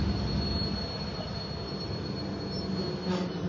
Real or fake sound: real